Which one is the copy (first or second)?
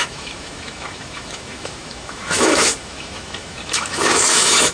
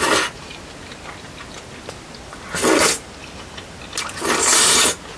first